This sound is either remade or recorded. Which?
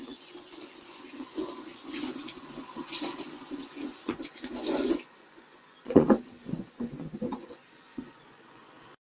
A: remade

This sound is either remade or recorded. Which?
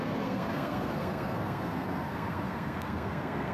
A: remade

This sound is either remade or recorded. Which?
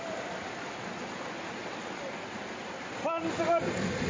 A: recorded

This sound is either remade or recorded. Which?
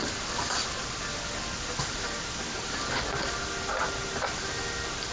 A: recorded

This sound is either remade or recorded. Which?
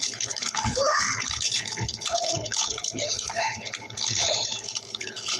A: remade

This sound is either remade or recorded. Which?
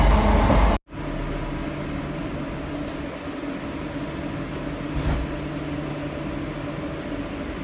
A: recorded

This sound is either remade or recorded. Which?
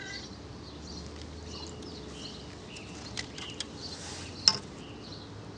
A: recorded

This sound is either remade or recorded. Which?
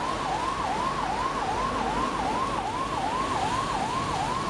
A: recorded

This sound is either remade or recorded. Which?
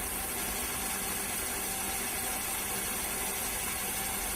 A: recorded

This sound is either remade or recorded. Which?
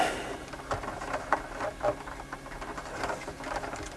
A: recorded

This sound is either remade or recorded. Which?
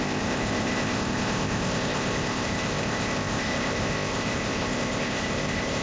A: remade